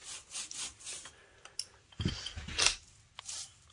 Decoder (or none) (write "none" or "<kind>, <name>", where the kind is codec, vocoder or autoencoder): none